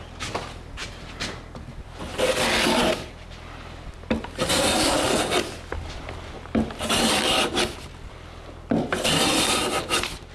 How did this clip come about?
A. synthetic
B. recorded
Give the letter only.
B